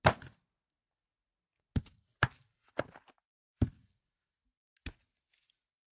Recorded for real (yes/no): yes